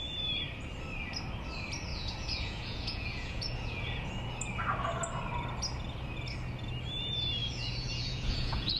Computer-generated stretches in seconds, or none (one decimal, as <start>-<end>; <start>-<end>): 1.9-4.1; 7.4-8.8